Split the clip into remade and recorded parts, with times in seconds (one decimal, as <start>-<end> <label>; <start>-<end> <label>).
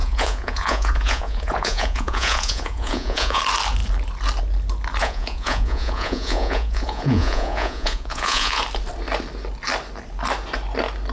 0.0-3.4 remade; 3.4-5.0 recorded; 5.0-8.6 remade; 8.6-11.1 recorded